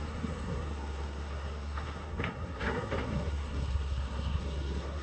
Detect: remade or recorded remade